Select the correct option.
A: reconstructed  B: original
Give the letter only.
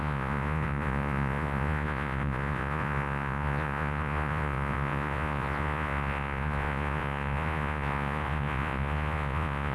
A